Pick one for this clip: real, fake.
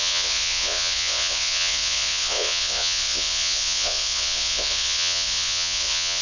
fake